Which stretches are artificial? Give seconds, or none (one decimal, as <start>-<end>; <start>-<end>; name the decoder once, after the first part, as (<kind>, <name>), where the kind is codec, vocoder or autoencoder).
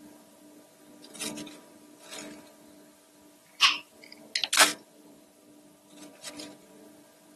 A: 4.7-6.7 (vocoder, BigVGAN v2)